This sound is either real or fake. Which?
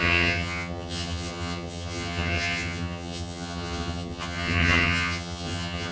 fake